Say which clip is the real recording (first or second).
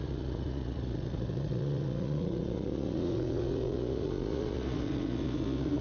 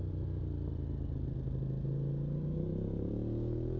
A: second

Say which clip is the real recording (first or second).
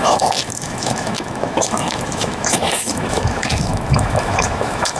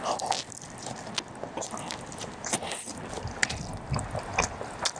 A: second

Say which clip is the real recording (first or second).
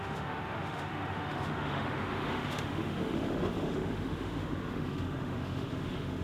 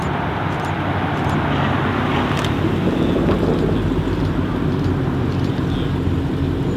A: second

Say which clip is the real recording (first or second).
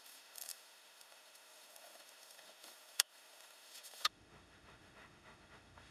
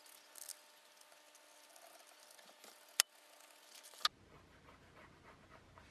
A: second